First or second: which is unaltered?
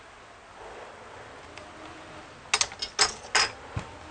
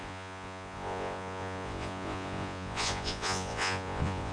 first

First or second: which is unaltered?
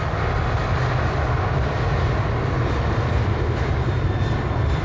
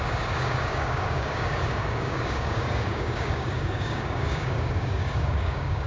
first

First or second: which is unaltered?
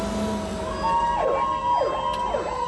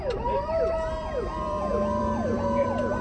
first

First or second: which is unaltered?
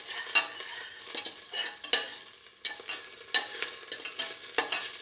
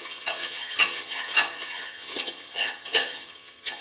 first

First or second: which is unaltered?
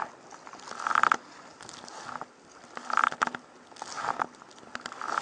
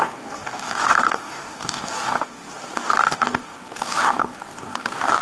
first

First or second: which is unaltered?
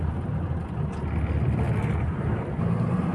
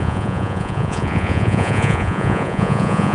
first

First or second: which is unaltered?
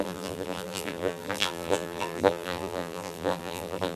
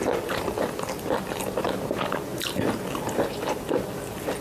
second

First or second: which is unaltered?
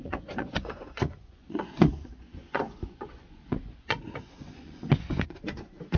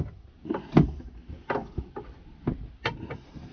second